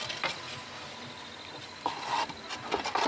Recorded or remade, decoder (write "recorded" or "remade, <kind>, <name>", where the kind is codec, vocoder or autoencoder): recorded